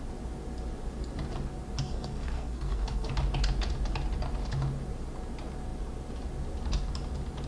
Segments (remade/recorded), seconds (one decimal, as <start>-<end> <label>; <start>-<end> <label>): 0.0-1.8 recorded; 1.8-3.1 remade; 3.1-7.5 recorded